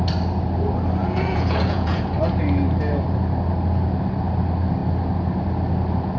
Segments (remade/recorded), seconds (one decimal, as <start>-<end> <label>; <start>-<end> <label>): 0.0-1.0 recorded; 1.0-2.0 remade; 2.0-6.2 recorded